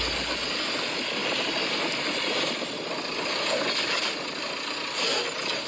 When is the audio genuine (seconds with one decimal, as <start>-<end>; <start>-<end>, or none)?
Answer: 0.0-5.7